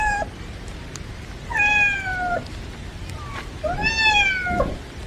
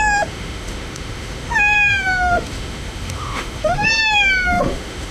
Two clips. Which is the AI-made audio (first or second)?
second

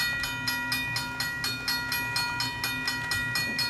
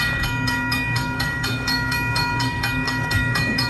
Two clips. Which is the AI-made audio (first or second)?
second